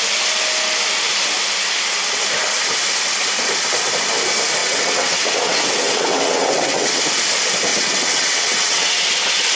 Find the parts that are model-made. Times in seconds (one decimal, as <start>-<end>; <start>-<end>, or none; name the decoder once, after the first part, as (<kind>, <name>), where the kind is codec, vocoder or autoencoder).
4.6-7.0 (vocoder, WaveNeXt); 7.7-9.0